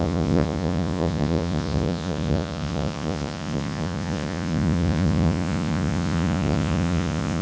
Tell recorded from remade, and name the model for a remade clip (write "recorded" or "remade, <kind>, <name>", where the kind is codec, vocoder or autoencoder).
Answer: remade, vocoder, Vocos